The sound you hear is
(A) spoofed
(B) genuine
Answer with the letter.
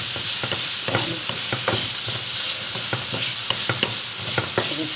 B